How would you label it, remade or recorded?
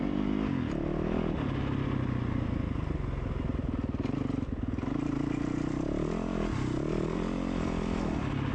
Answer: recorded